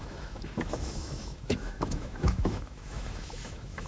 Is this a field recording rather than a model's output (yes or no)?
no